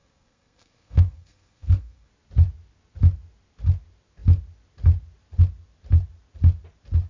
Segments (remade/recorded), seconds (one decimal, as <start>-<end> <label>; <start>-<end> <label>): 0.0-2.1 remade; 2.1-7.1 recorded